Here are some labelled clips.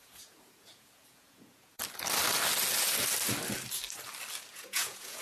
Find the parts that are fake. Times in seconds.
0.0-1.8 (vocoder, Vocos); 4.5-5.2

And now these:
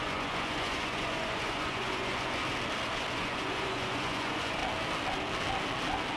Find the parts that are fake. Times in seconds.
0.0-2.4 (vocoder, Vocos); 3.1-4.6

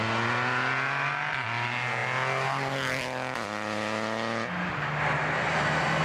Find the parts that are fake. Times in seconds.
none

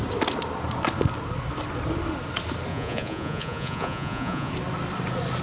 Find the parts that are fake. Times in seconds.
2.7-4.5 (vocoder, Vocos)

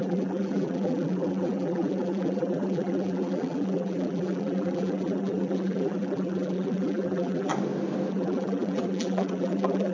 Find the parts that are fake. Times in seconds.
0.0-7.5 (vocoder, BigVGAN v2); 8.1-9.9

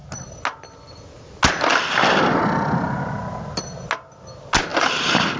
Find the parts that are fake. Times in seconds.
4.7-5.4 (vocoder, BigVGAN v2)